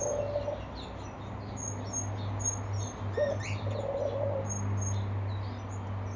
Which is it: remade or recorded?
recorded